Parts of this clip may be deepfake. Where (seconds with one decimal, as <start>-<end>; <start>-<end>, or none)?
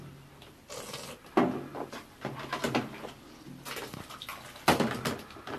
none